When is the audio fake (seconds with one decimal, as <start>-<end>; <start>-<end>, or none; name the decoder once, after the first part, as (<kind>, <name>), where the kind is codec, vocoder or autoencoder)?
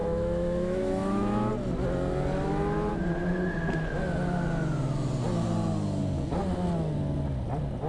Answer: 0.0-1.5 (autoencoder, DAC-VAE)